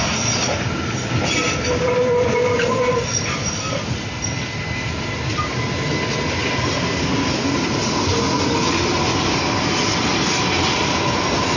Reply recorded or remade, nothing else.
recorded